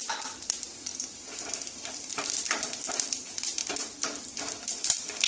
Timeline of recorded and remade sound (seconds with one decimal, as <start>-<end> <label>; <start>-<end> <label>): 0.0-5.3 recorded